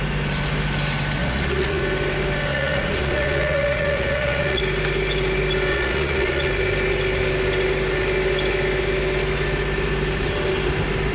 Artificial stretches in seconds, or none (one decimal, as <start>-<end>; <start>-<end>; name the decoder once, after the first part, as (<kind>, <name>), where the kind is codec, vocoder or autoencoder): 1.2-1.8 (vocoder, Vocos); 2.5-4.6; 5.7-6.5